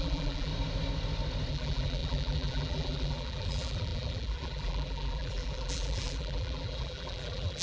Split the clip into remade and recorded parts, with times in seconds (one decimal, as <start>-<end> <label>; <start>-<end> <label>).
0.0-0.5 remade; 0.5-1.5 recorded; 1.5-7.6 remade